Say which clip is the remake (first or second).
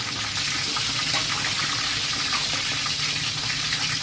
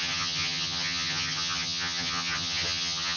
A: second